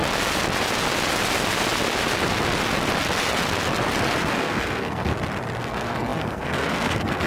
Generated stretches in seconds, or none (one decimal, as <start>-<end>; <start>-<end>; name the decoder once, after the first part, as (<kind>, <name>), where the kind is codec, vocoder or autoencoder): 4.4-5.1 (codec, SNAC); 5.6-7.3